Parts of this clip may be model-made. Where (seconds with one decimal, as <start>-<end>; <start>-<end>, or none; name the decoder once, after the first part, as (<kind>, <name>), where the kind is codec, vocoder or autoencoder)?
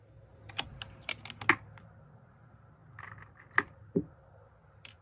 none